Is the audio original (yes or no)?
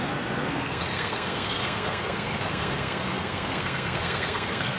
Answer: no